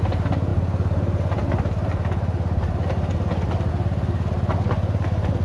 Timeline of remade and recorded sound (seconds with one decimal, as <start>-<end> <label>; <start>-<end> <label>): 0.0-5.4 recorded